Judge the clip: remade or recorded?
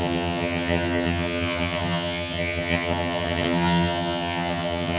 remade